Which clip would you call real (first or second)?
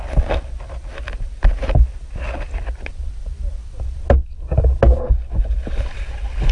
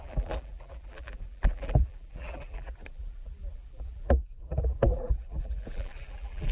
first